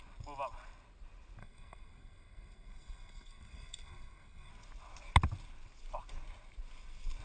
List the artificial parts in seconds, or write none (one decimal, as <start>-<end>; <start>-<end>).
1.4-4.5